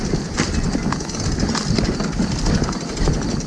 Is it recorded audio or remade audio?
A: recorded